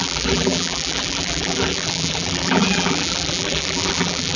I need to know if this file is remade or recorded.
remade